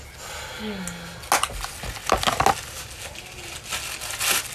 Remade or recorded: recorded